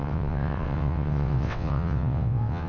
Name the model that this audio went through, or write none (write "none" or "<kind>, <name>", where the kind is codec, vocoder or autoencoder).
vocoder, WaveNeXt